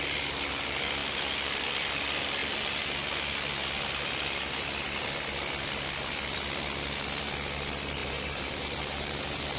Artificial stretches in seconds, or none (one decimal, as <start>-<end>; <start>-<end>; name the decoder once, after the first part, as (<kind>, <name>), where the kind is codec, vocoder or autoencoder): 8.0-9.6 (vocoder, BigVGAN v2)